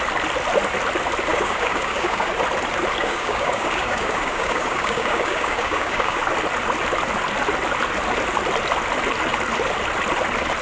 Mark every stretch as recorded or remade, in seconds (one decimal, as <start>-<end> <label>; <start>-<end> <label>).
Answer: 0.0-1.3 recorded; 1.3-2.3 remade; 2.3-3.0 recorded; 3.0-6.2 remade; 6.2-10.6 recorded